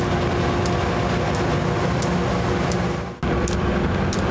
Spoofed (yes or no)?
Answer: no